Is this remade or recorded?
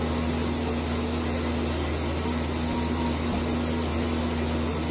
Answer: recorded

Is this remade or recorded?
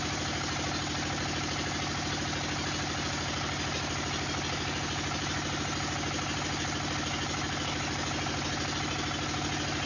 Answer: recorded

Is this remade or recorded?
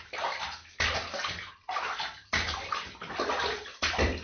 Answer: recorded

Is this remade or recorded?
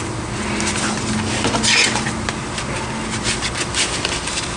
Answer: recorded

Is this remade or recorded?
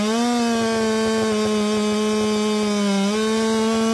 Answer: recorded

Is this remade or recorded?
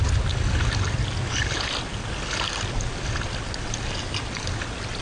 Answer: recorded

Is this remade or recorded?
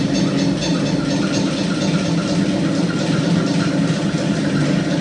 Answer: recorded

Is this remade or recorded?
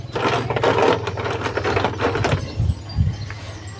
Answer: recorded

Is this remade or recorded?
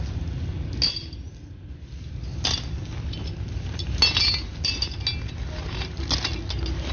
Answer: recorded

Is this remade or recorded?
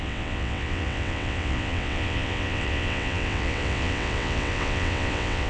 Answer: remade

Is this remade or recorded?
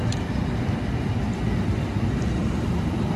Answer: recorded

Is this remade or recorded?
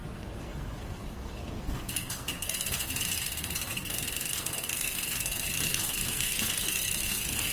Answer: remade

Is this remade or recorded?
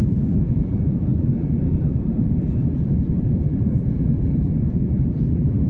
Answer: remade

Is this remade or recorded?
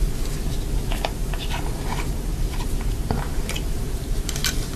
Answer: recorded